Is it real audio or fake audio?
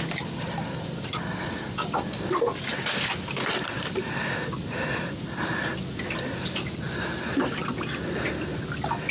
fake